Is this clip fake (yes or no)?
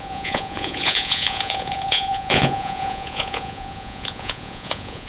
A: yes